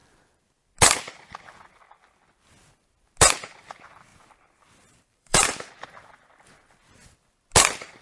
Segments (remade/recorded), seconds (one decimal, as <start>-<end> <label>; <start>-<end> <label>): 0.0-4.1 recorded; 4.1-5.7 remade; 5.7-8.0 recorded